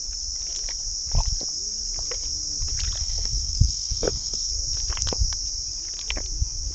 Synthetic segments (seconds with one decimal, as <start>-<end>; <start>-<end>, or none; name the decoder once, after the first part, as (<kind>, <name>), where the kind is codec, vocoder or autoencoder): 3.0-4.5 (codec, SNAC)